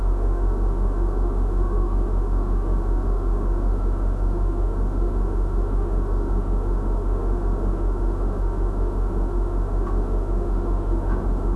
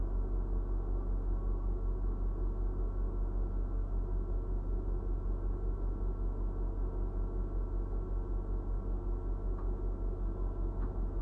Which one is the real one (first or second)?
second